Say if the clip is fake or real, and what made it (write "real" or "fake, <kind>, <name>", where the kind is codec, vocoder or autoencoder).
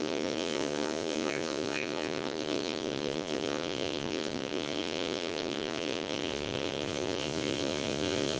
fake, vocoder, Vocos